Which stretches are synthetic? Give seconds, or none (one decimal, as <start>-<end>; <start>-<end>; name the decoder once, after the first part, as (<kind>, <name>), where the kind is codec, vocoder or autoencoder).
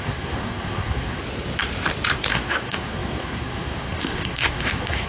0.0-1.2 (codec, SNAC); 2.3-5.1